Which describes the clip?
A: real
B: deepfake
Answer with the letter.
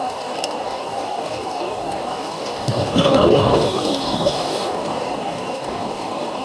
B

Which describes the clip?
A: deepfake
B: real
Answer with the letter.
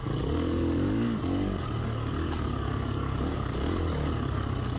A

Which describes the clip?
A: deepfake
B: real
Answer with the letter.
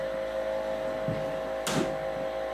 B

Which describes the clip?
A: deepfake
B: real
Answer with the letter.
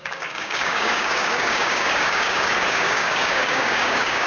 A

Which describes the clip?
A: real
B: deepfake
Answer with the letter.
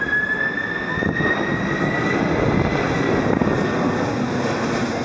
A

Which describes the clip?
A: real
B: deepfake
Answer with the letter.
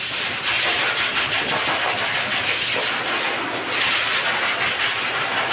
A